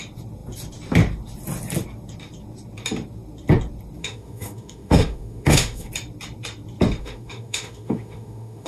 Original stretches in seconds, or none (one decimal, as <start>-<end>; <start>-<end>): 0.0-4.0; 5.9-7.0